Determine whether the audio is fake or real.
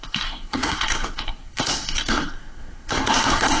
fake